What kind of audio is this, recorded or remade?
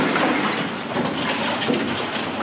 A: remade